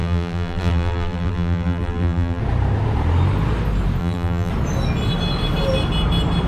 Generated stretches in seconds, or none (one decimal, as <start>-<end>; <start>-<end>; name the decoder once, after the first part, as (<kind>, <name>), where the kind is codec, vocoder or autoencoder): 0.0-2.4 (vocoder, BigVGAN v2); 4.0-4.5